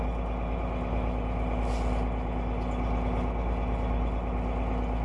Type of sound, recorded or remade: recorded